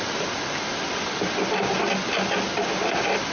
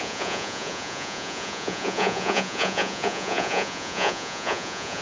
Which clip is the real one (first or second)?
first